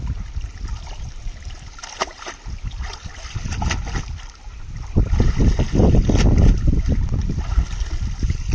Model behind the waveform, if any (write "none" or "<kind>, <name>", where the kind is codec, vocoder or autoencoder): none